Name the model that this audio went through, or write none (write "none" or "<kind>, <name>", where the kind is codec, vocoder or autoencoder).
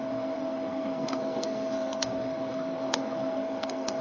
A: codec, SNAC